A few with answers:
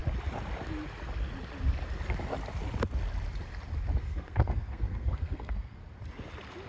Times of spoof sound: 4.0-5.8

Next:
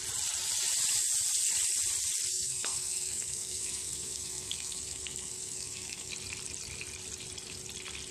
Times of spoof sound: 2.3-6.1

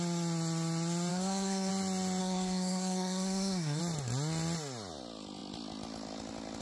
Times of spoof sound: 1.1-1.7; 2.2-3.8

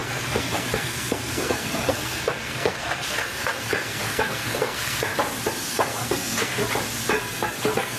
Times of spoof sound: 0.0-5.1; 5.7-6.6; 7.2-8.0

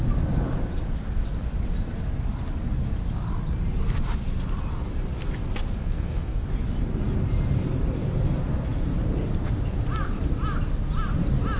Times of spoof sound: 5.8-6.4

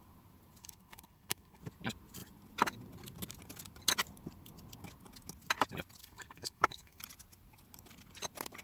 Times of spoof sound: 0.6-1.6; 6.0-7.0